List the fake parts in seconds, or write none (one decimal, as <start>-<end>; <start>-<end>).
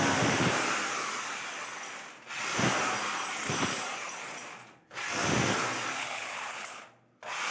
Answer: 6.0-6.8